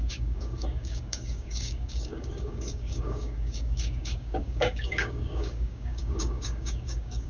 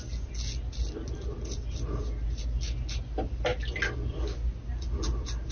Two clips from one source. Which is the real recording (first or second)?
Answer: second